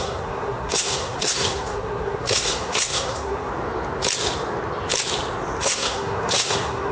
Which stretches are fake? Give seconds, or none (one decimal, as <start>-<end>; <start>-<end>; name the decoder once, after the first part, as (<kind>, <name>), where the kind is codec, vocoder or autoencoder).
0.0-3.5 (codec, SNAC); 5.6-6.9